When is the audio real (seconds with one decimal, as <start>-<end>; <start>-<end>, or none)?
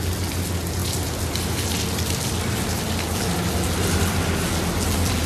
0.0-0.8; 3.0-5.3